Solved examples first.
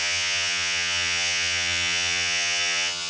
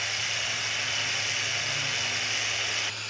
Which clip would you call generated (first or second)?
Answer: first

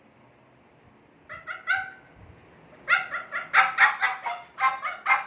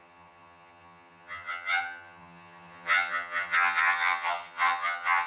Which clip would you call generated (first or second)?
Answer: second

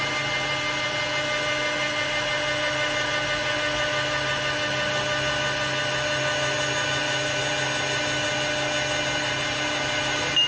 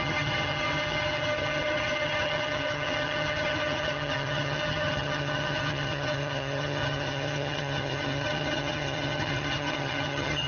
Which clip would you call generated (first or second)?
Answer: second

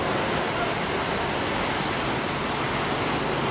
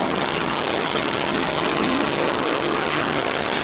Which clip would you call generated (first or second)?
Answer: second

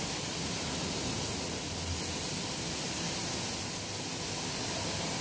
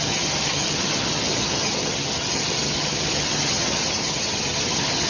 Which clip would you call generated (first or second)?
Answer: second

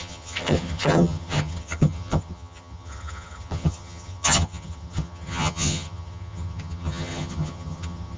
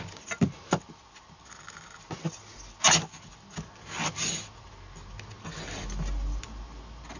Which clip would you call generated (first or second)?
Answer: first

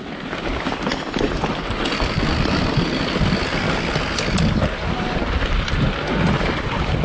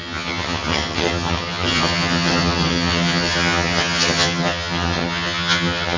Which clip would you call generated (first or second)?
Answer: second